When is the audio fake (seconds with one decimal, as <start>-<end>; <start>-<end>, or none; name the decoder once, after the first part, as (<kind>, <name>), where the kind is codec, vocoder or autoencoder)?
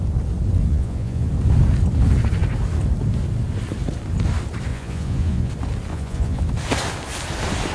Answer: 0.7-1.3 (vocoder, Vocos); 4.7-5.5; 5.9-6.4